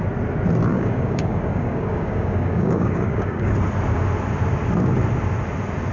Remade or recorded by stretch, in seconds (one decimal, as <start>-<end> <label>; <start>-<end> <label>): 0.0-0.7 recorded; 0.7-3.5 remade; 3.5-5.9 recorded